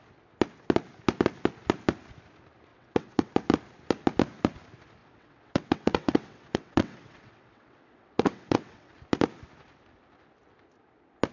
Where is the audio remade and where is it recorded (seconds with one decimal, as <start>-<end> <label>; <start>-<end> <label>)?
0.0-2.7 recorded; 2.7-3.3 remade; 3.3-5.0 recorded; 5.0-8.9 remade; 8.9-11.3 recorded